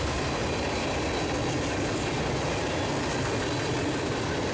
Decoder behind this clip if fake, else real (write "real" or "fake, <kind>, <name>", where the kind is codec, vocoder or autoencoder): real